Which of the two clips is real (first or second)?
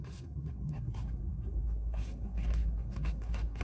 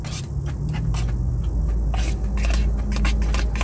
second